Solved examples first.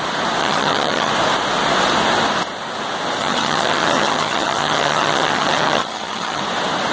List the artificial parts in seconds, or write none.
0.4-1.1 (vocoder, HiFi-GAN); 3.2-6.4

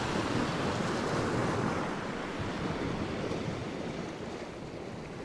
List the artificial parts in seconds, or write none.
none

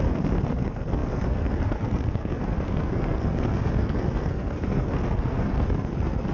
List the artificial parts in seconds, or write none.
0.0-6.3 (codec, SNAC)

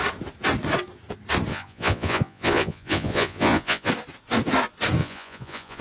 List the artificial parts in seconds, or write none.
1.5-3.9 (vocoder, Vocos); 5.0-5.8

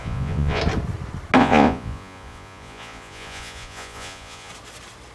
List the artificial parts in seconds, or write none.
0.0-0.6 (vocoder, Vocos); 1.4-4.5